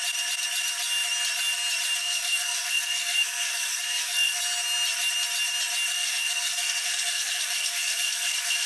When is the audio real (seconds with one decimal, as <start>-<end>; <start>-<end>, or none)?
0.0-2.0; 4.4-5.9